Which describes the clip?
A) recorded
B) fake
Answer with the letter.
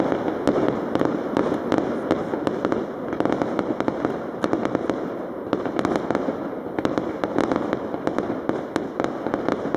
A